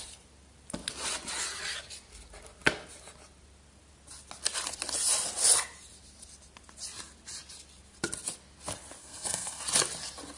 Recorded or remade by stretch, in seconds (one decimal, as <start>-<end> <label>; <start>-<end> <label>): 0.0-9.0 recorded; 9.0-9.6 remade; 9.6-10.4 recorded